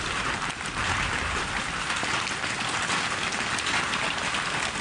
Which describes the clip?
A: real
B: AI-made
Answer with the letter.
A